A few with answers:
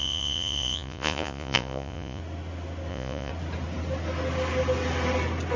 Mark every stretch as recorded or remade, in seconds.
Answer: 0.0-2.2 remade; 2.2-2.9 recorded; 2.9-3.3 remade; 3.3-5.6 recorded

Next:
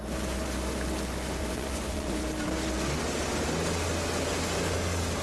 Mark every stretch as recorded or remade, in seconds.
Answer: 0.0-1.4 recorded; 1.4-2.2 remade; 2.2-5.2 recorded